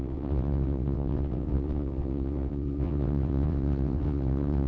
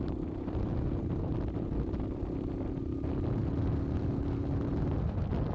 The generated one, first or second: first